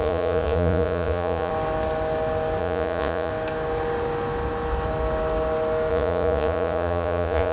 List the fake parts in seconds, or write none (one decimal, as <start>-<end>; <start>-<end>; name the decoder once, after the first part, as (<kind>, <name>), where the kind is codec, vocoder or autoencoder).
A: 0.0-1.5 (vocoder, Vocos); 2.6-3.3; 5.9-7.5

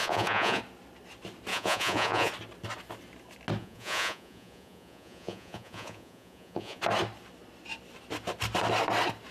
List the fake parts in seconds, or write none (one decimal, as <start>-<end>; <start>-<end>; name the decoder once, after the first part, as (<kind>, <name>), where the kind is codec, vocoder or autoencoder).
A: 0.0-0.6 (vocoder, Vocos); 1.5-2.3; 3.6-6.8